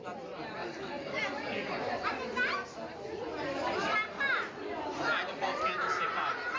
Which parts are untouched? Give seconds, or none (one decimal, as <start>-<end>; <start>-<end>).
0.0-0.6; 1.2-6.6